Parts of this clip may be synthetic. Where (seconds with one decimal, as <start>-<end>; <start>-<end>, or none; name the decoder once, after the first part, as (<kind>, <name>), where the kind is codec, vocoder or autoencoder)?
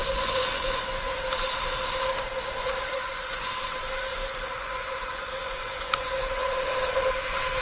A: 0.0-1.2 (vocoder, Vocos); 2.6-3.5; 4.1-6.5